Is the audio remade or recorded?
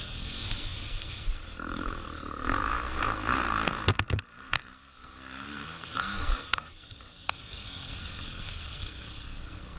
remade